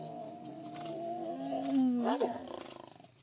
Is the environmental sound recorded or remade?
recorded